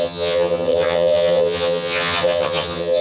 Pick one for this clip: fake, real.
fake